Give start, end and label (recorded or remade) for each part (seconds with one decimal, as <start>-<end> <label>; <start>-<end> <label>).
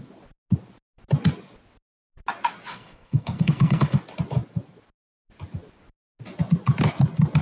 0.0-2.7 recorded; 2.7-4.0 remade; 4.0-7.4 recorded